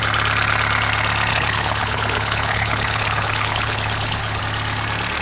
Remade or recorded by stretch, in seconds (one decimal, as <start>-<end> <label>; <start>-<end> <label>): 0.0-1.3 recorded; 1.3-4.4 remade; 4.4-5.2 recorded